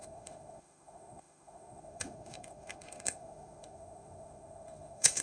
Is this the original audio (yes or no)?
no